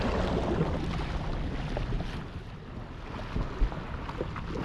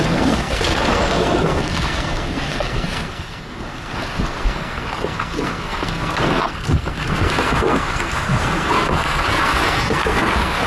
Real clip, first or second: first